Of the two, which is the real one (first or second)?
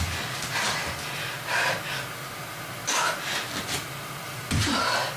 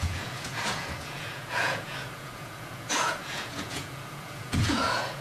first